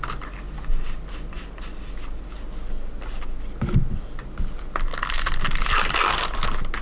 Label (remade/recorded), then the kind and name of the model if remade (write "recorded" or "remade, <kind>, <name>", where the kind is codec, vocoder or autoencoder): recorded